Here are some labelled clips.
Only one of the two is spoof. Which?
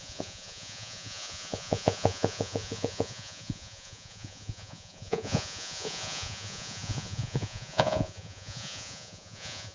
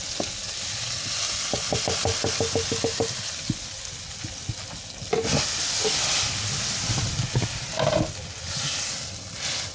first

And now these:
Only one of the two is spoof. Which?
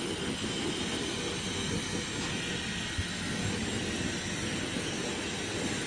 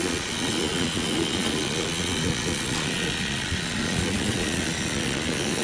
second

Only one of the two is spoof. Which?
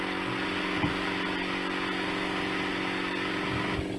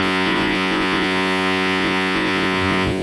second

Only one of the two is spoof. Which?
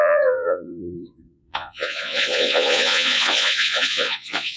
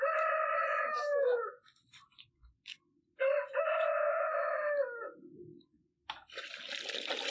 first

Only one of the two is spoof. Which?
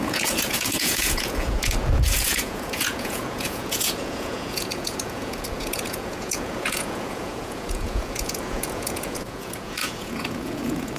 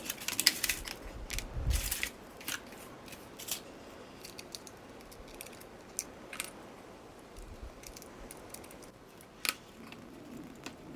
first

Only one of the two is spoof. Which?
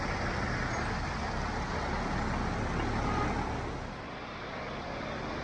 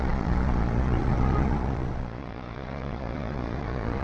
second